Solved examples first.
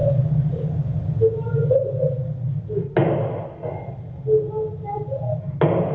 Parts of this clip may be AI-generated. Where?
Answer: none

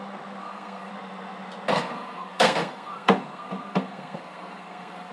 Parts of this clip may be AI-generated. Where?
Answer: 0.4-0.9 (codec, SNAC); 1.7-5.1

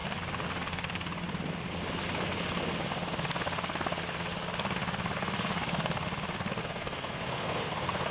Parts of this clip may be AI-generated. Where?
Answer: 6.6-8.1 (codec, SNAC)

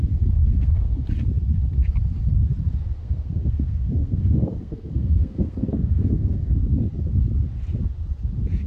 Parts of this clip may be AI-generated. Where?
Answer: 0.4-1.0 (codec, SNAC); 3.0-6.5